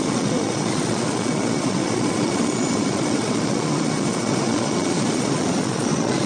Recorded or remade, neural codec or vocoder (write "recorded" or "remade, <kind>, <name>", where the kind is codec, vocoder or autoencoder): remade, vocoder, Vocos